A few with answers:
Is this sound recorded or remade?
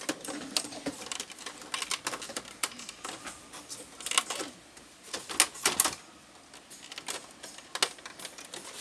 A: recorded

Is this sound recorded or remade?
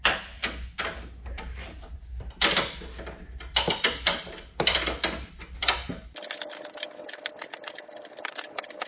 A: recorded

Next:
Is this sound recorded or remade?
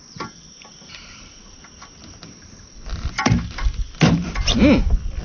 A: remade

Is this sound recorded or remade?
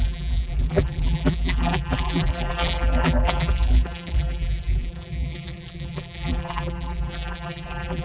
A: remade